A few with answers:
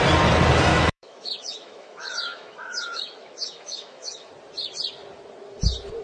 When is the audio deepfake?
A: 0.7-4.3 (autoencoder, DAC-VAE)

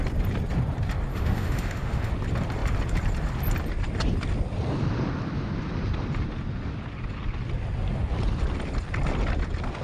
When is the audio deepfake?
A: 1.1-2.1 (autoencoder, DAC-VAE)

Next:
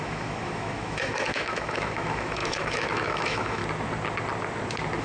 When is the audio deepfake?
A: 0.0-3.6 (autoencoder, DAC-VAE)

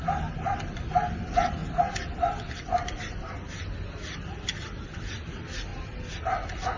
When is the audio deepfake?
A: none

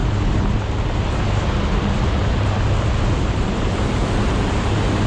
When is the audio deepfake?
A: none